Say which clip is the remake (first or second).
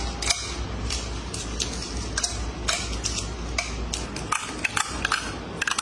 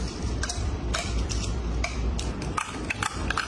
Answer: second